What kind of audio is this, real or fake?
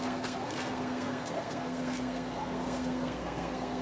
fake